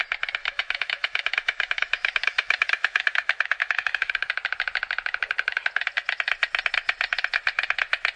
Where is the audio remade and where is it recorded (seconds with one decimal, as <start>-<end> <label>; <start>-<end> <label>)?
0.0-0.4 recorded; 0.4-4.1 remade; 4.1-8.2 recorded